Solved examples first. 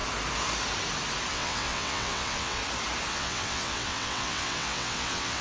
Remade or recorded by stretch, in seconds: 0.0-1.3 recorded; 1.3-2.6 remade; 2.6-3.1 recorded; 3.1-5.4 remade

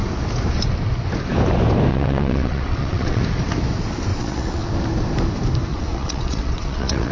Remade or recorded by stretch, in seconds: 0.0-1.9 recorded; 1.9-3.2 remade; 3.2-4.1 recorded; 4.1-4.7 remade; 4.7-5.7 recorded; 5.7-7.1 remade

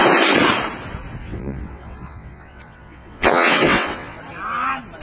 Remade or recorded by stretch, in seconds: 0.0-1.2 recorded; 1.2-4.2 remade; 4.2-5.0 recorded

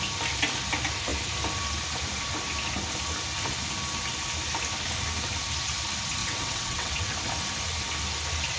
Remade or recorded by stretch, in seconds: 0.0-6.2 recorded; 6.2-7.1 remade; 7.1-8.6 recorded

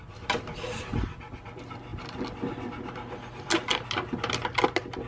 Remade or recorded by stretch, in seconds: 0.0-5.1 recorded

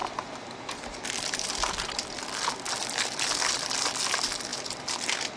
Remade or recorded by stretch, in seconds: 0.0-5.4 recorded

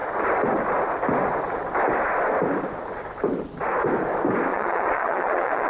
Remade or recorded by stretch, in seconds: 0.0-4.5 recorded; 4.5-5.7 remade

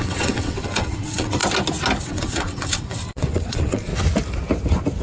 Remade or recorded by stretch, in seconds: 0.0-1.4 remade; 1.4-2.0 recorded; 2.0-3.9 remade; 3.9-5.0 recorded